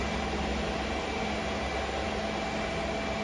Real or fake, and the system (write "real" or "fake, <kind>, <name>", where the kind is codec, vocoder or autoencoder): real